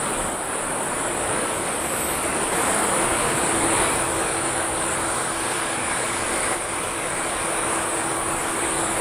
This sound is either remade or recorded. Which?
remade